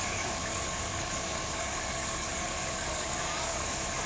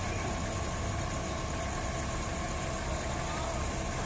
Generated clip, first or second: first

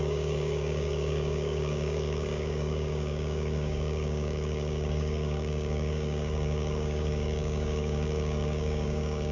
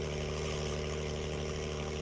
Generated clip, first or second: first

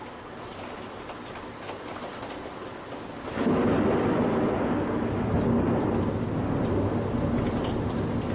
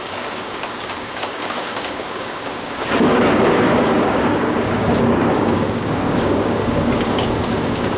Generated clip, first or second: second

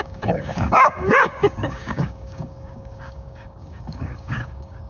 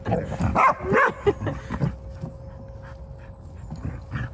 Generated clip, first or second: first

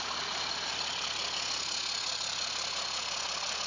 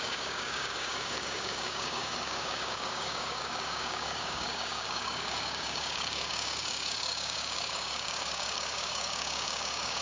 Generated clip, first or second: second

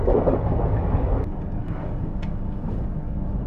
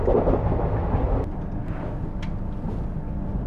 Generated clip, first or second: first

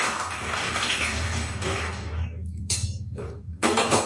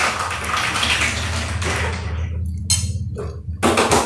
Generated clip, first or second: first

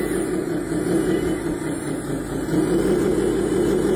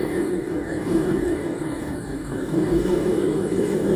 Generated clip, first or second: second